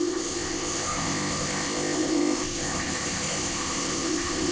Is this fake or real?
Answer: fake